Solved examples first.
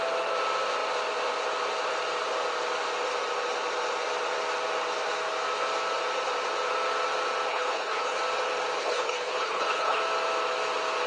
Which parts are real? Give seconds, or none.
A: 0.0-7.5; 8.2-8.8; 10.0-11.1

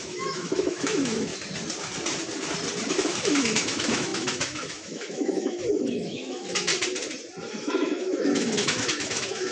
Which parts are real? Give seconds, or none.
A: 1.3-2.9; 6.7-7.5

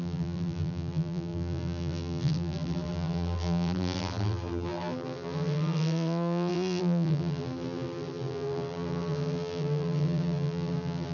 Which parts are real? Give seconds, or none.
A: none

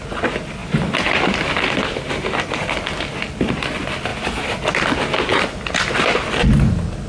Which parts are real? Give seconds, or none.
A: 0.0-5.3; 6.0-7.1

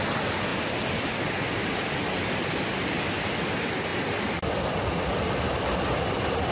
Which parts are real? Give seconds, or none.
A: 0.0-6.5